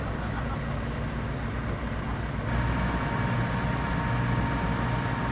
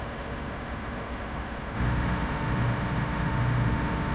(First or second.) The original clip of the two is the first